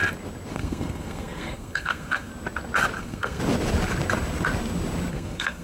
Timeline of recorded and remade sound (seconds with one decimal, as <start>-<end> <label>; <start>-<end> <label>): 0.0-0.5 recorded; 0.5-2.3 remade; 2.3-3.0 recorded; 3.0-3.4 remade; 3.4-5.1 recorded; 5.1-5.6 remade